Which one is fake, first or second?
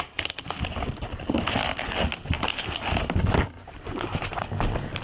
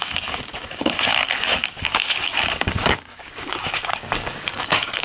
second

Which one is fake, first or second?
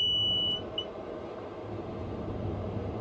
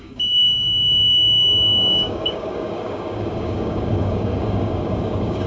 second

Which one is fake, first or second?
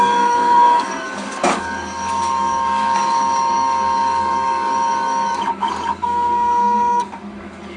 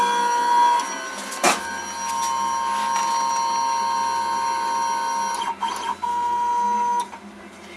first